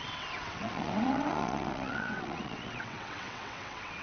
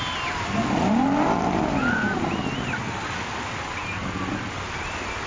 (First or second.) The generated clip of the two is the first